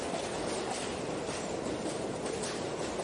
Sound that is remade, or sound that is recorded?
recorded